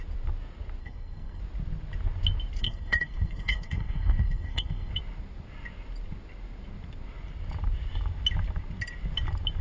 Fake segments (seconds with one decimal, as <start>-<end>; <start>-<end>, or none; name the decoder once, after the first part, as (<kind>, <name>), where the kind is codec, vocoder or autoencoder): 0.8-1.4 (codec, SNAC); 2.6-4.9